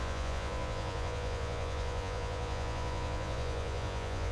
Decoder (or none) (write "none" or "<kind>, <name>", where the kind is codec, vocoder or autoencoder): vocoder, Vocos